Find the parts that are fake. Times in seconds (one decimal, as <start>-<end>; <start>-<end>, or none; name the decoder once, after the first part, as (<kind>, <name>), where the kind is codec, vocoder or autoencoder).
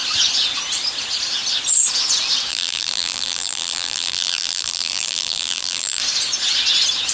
2.5-6.0 (vocoder, BigVGAN v2)